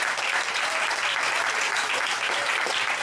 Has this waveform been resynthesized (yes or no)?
no